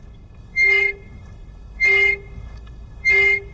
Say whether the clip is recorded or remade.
remade